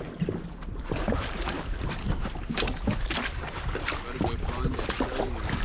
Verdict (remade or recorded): recorded